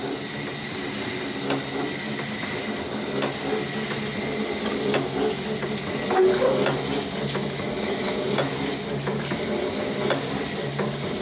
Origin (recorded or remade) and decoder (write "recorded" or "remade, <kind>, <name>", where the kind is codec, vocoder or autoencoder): recorded